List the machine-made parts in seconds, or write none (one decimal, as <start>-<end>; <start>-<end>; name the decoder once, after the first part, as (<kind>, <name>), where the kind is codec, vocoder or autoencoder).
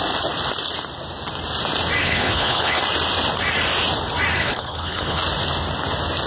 2.0-2.8 (codec, HILCodec); 4.4-5.2